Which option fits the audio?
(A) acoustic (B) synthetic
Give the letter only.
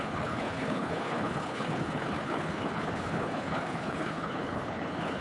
B